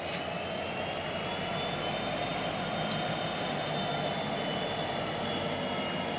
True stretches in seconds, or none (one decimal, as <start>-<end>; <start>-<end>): 0.0-6.2